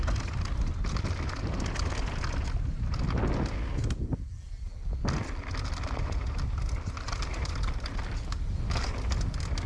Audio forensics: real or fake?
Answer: real